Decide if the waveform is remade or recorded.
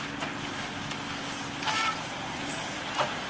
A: recorded